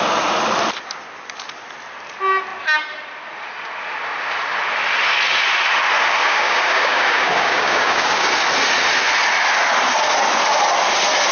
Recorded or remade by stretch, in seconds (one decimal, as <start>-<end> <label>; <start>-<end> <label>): 0.0-6.2 recorded; 6.2-8.3 remade; 8.3-11.3 recorded